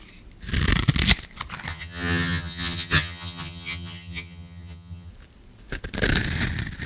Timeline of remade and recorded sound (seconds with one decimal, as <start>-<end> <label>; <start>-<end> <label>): 0.0-1.7 recorded; 1.7-5.1 remade; 5.1-6.9 recorded